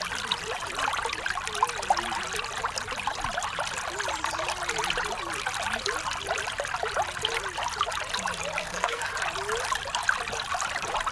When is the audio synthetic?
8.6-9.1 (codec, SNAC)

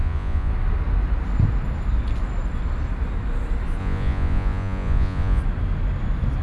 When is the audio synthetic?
0.0-0.5 (vocoder, Vocos); 3.8-5.4

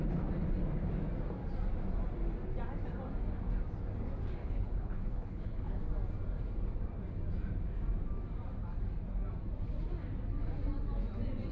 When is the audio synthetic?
4.4-5.8 (codec, HILCodec)

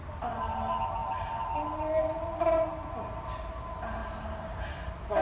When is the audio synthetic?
none

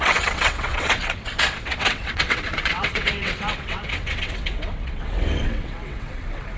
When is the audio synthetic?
0.0-6.6 (vocoder, WaveNeXt)